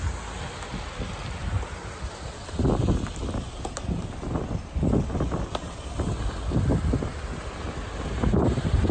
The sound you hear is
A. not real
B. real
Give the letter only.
B